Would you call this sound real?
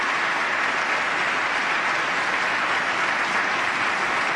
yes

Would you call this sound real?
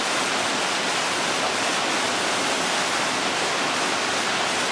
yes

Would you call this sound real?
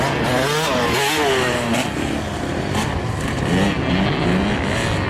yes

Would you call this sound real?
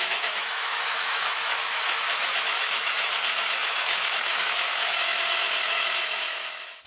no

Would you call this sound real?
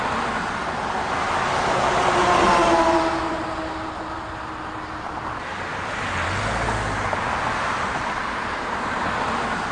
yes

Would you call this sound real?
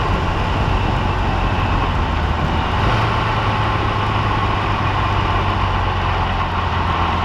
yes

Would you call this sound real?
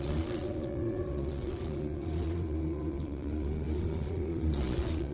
no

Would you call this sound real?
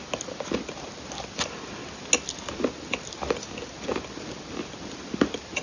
yes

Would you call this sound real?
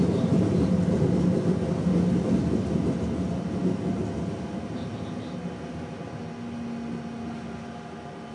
yes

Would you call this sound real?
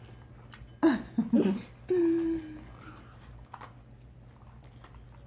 yes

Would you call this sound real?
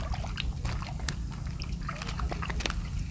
yes